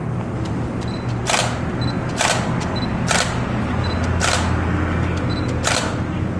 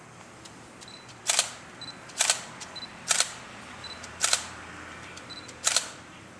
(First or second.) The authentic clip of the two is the first